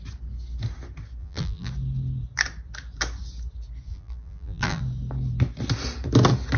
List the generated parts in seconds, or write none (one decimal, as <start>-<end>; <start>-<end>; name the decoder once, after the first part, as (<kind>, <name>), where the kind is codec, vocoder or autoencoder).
1.2-1.7 (vocoder, BigVGAN v2); 3.9-4.8